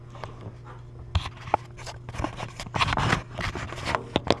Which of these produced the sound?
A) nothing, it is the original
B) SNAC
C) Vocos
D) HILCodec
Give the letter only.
A